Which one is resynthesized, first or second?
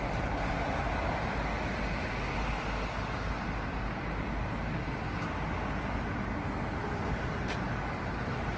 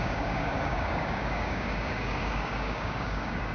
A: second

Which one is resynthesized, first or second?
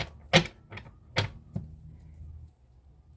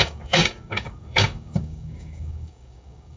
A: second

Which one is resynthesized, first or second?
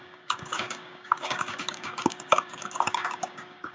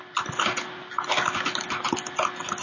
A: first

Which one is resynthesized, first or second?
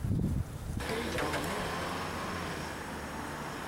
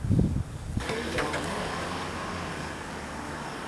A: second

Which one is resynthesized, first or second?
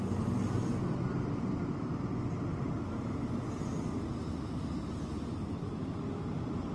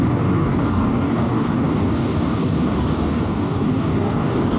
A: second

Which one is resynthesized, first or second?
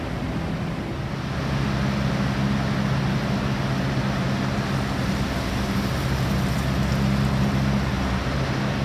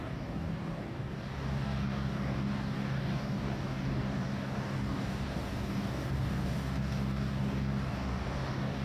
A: second